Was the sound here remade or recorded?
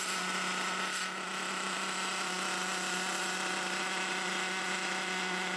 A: recorded